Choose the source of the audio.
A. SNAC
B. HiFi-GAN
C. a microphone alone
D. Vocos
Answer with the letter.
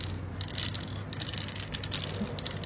C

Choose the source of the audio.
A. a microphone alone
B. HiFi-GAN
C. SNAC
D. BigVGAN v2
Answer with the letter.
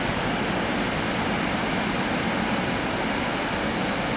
A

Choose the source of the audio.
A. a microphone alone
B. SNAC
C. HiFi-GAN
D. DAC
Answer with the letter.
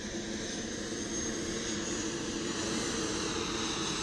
A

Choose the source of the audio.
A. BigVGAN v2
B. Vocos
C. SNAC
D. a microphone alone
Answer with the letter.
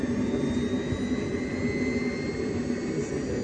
D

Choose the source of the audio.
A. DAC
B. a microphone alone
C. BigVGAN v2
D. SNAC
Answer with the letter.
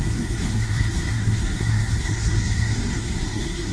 D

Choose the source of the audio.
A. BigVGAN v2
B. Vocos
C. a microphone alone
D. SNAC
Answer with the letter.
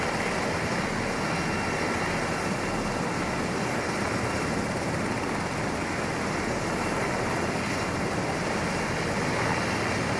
C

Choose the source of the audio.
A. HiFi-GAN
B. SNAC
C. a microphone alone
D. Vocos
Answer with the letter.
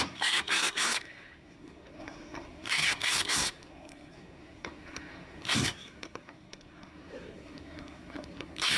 B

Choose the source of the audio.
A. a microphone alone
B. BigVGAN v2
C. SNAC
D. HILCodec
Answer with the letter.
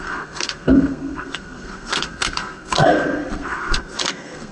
C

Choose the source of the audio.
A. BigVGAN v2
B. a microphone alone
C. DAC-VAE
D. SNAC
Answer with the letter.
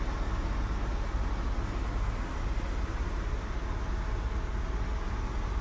B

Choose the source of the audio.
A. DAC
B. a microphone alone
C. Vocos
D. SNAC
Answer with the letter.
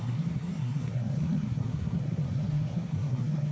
D